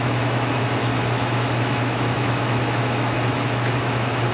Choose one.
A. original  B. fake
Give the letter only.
B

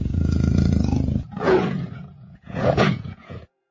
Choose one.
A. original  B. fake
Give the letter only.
B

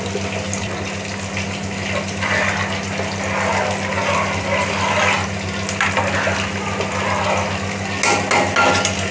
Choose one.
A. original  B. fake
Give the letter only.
A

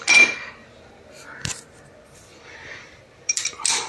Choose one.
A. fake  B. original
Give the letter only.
A